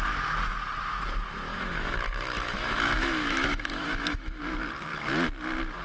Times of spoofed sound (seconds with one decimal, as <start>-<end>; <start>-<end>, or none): 1.5-4.4